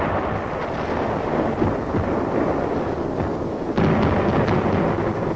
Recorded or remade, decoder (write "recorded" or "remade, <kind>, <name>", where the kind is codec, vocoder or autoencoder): recorded